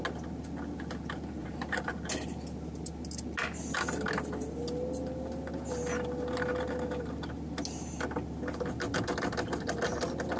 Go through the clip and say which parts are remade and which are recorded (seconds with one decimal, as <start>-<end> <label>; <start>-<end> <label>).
0.0-1.4 recorded; 1.4-1.9 remade; 1.9-10.4 recorded